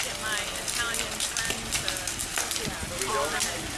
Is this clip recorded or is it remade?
recorded